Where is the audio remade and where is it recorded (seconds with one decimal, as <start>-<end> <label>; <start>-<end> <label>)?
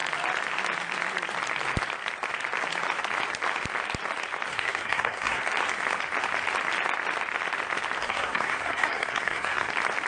0.0-4.5 recorded; 4.5-5.4 remade; 5.4-8.0 recorded; 8.0-9.7 remade; 9.7-10.1 recorded